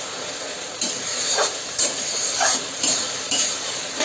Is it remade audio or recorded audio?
remade